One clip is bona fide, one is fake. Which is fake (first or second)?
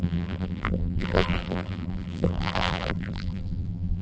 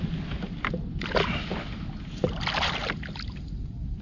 first